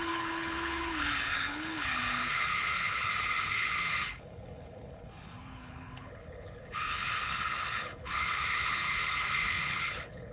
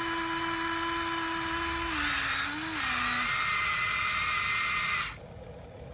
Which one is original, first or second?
second